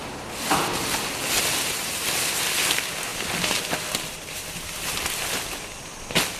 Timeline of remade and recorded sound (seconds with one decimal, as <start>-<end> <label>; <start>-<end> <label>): 0.0-6.4 recorded